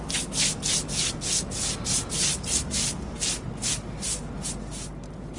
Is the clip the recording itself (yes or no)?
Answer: yes